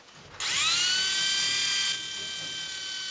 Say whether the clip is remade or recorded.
recorded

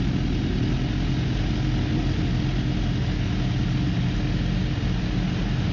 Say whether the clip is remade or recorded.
recorded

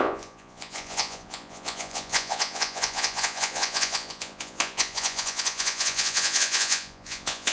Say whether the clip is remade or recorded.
remade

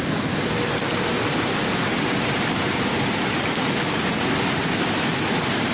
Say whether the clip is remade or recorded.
recorded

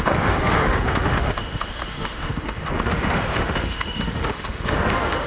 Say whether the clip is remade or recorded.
remade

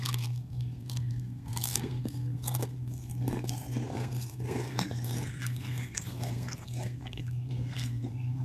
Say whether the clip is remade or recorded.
remade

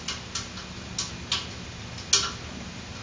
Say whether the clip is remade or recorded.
recorded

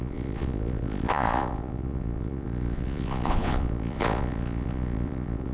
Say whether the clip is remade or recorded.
remade